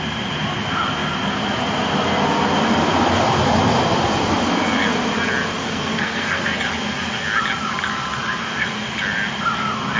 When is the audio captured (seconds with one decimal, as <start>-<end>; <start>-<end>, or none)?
0.0-5.6; 6.6-10.0